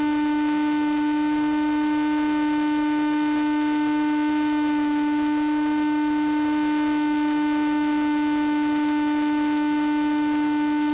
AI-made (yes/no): no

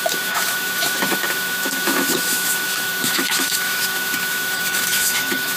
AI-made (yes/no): yes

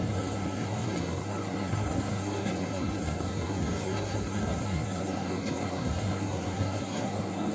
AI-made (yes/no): yes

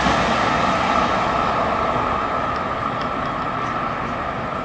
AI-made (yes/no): no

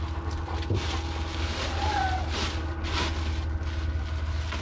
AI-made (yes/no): no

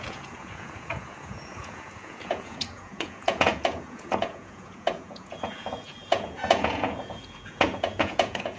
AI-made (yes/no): yes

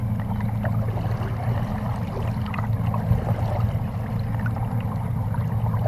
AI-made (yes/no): no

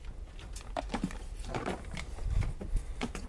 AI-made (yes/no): no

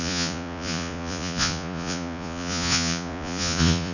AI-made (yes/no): yes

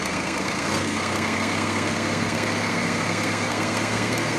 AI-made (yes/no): yes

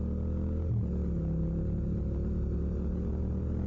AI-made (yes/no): no